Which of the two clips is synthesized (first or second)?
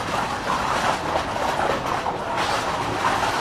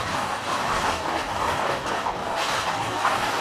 second